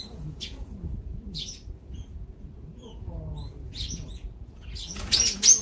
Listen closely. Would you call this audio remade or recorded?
remade